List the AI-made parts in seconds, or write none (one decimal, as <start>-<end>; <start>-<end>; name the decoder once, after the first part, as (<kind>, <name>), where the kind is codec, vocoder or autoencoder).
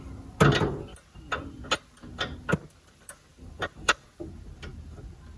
3.3-4.3 (vocoder, BigVGAN v2)